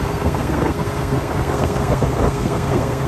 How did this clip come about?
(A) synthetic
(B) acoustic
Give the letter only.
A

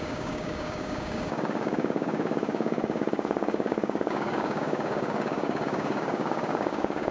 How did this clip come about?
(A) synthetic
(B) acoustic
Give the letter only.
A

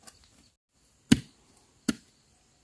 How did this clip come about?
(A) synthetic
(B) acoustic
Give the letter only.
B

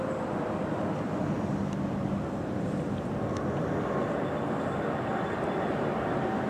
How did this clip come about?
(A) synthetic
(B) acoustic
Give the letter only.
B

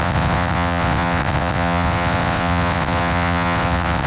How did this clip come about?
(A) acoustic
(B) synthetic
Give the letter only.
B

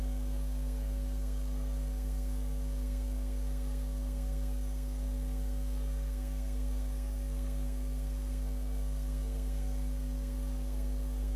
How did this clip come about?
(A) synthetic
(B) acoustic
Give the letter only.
A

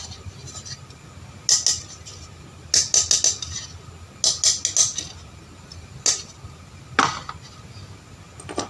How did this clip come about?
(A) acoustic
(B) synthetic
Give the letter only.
A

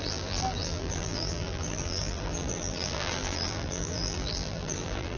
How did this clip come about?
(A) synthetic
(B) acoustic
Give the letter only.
A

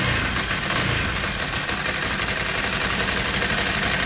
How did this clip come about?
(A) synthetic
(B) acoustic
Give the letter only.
B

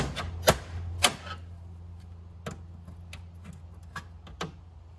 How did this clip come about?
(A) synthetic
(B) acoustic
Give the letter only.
B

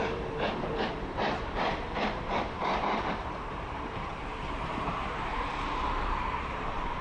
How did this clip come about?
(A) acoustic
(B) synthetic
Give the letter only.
B